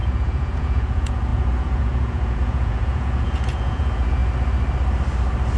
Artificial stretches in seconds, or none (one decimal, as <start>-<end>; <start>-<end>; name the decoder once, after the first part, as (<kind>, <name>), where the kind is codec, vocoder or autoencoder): 0.0-4.2 (vocoder, Vocos)